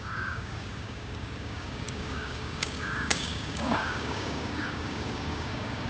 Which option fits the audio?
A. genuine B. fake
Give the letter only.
B